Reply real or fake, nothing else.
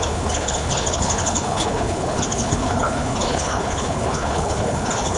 fake